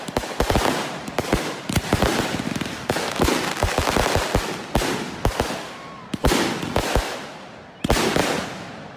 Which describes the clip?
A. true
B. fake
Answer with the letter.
B